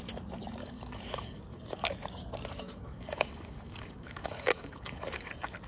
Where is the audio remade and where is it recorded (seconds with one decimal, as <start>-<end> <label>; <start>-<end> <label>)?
0.0-0.6 recorded; 0.6-1.9 remade; 1.9-2.6 recorded; 2.6-5.3 remade; 5.3-5.7 recorded